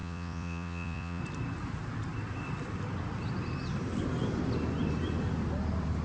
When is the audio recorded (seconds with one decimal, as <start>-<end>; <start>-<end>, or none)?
1.2-6.0